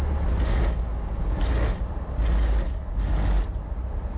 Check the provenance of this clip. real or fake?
real